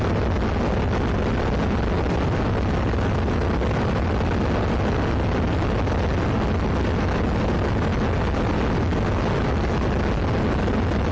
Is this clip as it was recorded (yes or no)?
yes